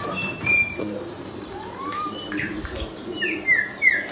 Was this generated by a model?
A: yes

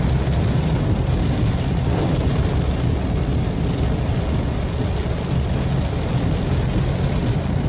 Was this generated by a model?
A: no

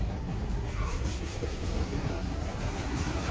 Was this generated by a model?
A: yes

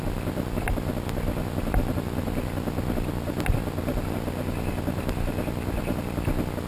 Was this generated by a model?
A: no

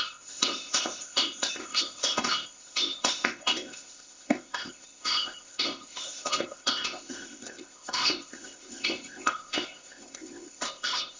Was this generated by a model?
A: yes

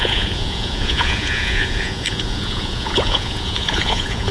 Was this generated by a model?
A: yes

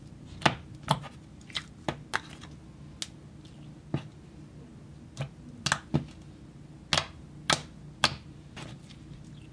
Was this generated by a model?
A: no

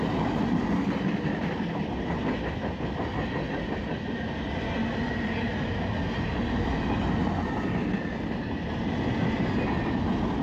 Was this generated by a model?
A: no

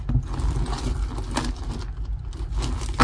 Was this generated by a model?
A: no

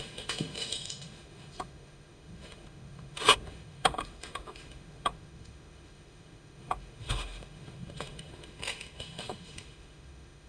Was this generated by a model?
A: yes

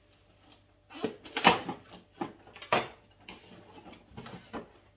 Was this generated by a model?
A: no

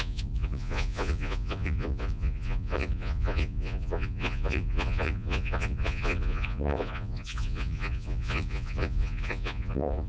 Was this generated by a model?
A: yes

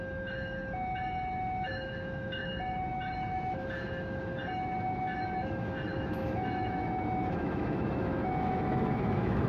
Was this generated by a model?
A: yes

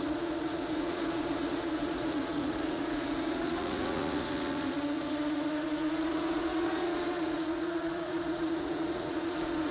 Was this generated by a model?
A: yes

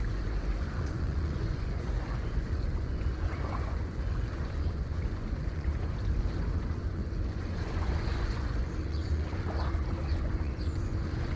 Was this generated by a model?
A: yes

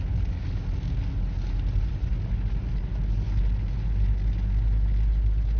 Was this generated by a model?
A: no